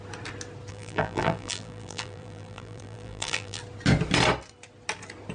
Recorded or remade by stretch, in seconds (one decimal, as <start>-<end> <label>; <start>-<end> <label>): 0.0-0.7 recorded; 0.7-3.6 remade; 3.6-5.3 recorded